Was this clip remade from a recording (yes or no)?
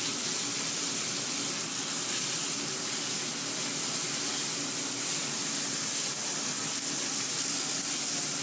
no